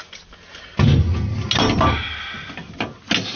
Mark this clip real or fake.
real